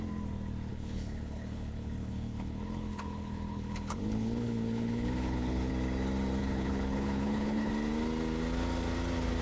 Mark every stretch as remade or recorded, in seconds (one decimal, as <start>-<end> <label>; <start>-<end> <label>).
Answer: 0.0-0.7 recorded; 0.7-5.7 remade; 5.7-6.4 recorded; 6.4-7.7 remade; 7.7-9.4 recorded